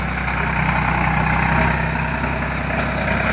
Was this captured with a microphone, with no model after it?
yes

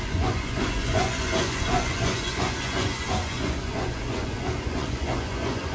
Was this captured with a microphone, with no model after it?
no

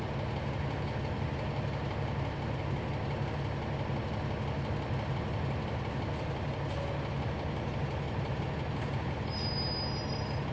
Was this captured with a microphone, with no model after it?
yes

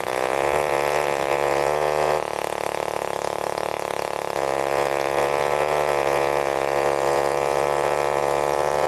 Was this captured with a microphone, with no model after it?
no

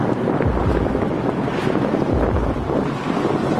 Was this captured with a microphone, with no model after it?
yes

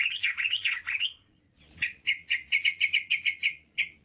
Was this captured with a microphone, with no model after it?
no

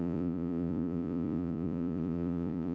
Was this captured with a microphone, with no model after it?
no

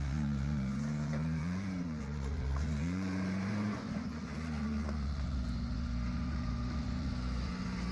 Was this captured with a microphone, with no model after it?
no